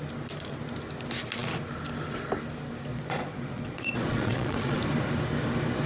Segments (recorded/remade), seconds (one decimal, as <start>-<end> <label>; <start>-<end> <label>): 0.0-2.9 recorded; 2.9-4.8 remade; 4.8-5.9 recorded

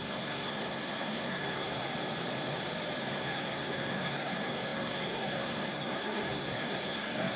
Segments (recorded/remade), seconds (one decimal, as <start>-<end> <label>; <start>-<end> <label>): 0.0-1.8 remade; 1.8-3.1 recorded; 3.1-7.4 remade

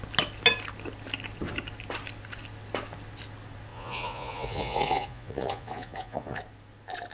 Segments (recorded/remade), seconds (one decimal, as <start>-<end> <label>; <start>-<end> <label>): 0.0-3.7 recorded; 3.7-6.4 remade; 6.4-7.1 recorded

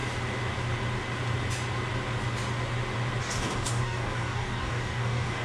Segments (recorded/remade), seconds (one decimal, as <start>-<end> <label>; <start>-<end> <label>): 0.0-3.2 recorded; 3.2-5.4 remade

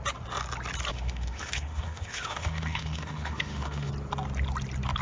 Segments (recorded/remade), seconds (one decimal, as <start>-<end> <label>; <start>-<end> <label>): 0.0-0.9 recorded; 0.9-3.9 remade; 3.9-5.0 recorded